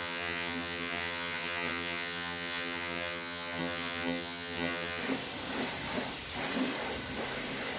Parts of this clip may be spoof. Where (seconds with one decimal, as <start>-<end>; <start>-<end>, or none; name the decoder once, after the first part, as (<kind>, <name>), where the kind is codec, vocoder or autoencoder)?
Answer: 0.0-5.0 (vocoder, HiFi-GAN)